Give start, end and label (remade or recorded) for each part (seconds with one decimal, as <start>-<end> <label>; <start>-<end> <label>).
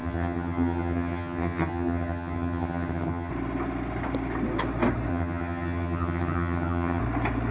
0.0-3.3 remade; 3.3-5.1 recorded; 5.1-7.0 remade; 7.0-7.5 recorded